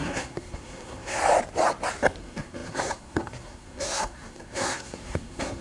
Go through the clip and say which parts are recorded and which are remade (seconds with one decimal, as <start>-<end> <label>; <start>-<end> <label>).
0.0-1.2 remade; 1.2-2.2 recorded; 2.2-5.6 remade